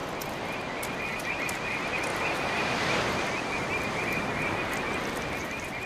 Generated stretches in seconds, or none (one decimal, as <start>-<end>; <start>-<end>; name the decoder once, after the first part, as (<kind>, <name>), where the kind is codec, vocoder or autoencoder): none